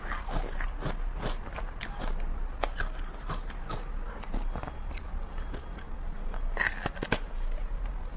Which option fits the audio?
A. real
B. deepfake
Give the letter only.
A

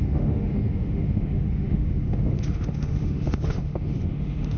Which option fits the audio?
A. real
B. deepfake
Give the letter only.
B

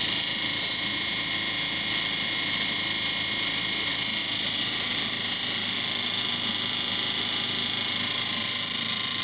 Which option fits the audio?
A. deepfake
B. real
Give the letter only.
B